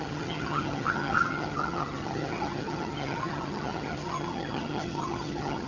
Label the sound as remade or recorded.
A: remade